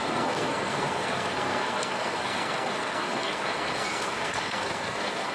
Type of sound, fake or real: fake